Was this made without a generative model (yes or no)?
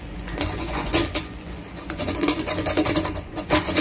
no